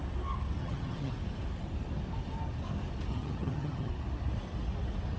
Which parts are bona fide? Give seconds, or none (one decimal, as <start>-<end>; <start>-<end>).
0.0-0.6; 1.1-3.1; 3.9-5.2